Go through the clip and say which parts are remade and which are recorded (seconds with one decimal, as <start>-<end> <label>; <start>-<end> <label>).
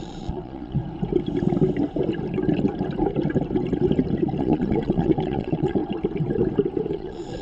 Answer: 0.0-0.8 remade; 0.8-4.4 recorded; 4.4-5.8 remade; 5.8-6.9 recorded; 6.9-7.4 remade